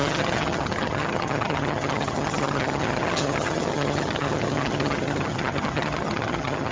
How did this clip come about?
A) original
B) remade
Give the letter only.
B